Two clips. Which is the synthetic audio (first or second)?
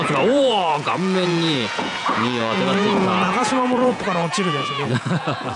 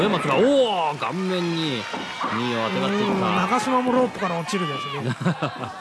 first